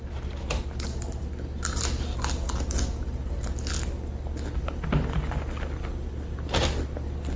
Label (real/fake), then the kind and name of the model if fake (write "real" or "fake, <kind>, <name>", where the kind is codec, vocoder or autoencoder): real